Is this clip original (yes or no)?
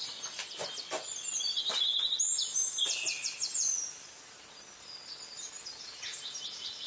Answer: yes